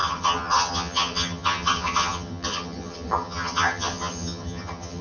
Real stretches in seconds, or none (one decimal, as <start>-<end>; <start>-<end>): none